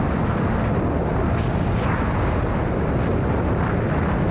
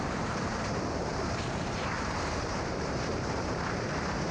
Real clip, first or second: first